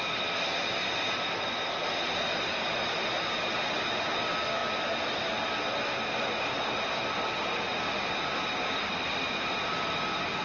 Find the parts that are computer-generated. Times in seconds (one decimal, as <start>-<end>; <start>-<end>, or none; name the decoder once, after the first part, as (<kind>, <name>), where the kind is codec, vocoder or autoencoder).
none